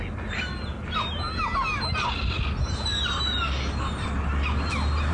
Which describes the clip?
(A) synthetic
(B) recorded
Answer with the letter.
B